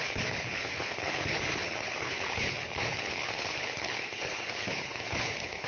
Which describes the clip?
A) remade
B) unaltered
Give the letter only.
A